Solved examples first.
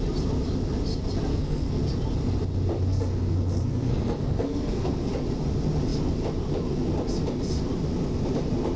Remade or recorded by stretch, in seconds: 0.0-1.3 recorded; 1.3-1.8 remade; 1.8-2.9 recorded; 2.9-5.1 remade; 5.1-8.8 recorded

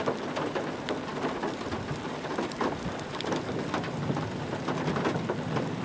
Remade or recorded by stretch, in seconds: 0.0-1.1 recorded; 1.1-4.6 remade; 4.6-5.8 recorded

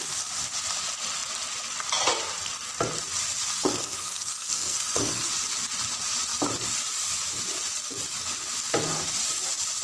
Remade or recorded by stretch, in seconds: 0.0-3.6 recorded; 3.6-5.3 remade; 5.3-9.8 recorded

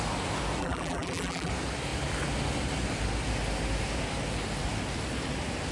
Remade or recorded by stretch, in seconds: 0.0-0.6 recorded; 0.6-1.5 remade; 1.5-5.7 recorded